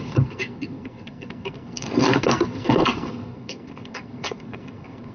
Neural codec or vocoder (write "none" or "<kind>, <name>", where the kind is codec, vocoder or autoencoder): codec, SNAC